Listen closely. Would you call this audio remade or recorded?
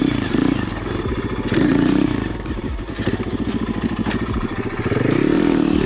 remade